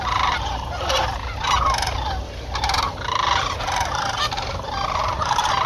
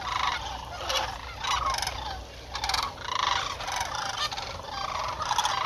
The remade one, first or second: first